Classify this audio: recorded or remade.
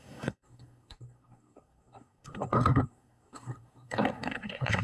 remade